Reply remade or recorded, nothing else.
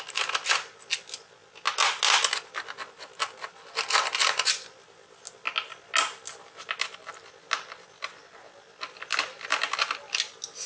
recorded